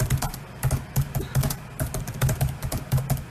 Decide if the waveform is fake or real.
real